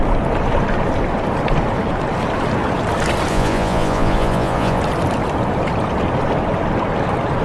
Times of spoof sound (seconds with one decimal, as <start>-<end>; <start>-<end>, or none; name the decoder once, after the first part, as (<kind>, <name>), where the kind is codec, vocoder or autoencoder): 3.3-4.8 (vocoder, Vocos)